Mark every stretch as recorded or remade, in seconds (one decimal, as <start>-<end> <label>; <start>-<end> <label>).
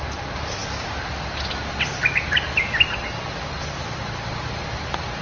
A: 0.0-5.2 recorded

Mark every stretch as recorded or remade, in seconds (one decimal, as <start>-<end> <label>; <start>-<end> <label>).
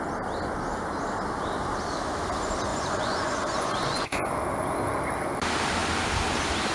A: 0.0-2.7 recorded; 2.7-4.3 remade; 4.3-6.7 recorded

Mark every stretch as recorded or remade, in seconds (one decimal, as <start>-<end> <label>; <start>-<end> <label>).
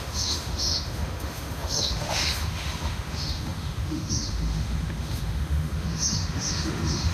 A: 0.0-7.1 remade